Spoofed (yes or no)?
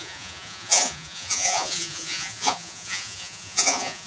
yes